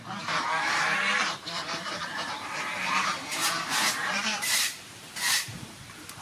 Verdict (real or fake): fake